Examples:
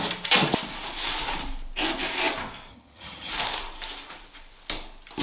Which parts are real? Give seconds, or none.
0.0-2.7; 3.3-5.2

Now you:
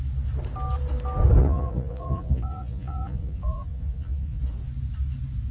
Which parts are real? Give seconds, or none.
0.0-1.4; 4.4-5.5

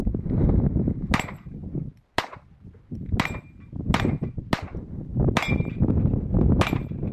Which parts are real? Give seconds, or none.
0.0-7.1

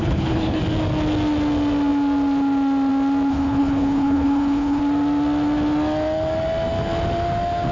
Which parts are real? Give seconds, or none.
0.6-3.3; 4.8-7.7

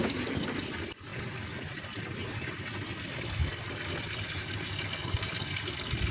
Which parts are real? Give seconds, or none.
0.0-6.1

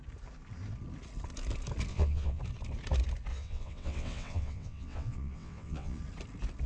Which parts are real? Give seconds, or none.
0.0-1.9; 2.4-3.3; 6.0-6.7

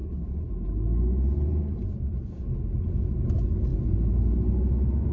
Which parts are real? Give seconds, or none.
0.5-5.1